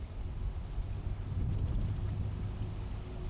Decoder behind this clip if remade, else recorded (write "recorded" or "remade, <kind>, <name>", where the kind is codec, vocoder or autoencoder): recorded